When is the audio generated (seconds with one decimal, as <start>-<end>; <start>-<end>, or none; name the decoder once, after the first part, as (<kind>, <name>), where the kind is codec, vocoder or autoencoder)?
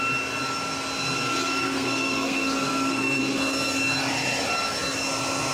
1.4-3.2 (codec, SNAC)